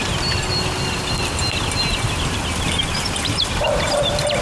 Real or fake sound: real